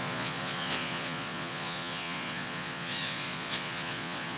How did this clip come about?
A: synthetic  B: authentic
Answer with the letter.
A